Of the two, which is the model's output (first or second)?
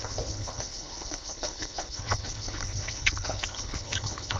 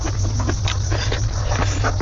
first